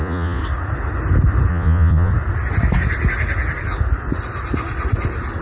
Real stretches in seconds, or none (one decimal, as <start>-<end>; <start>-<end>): 0.4-1.5; 2.1-5.4

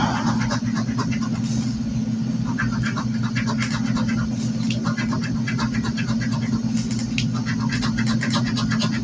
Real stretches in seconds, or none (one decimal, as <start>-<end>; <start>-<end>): 0.0-9.0

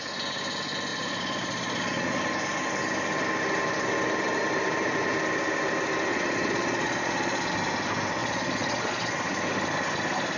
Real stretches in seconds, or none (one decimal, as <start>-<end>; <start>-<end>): 0.0-0.9; 2.2-6.1; 7.5-8.2; 9.1-10.4

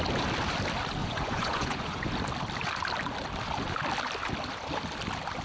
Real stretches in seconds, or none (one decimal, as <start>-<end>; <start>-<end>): 0.0-1.0; 2.1-5.4

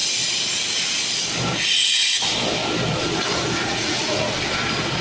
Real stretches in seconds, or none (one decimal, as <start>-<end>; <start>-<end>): 0.0-3.6; 4.3-5.0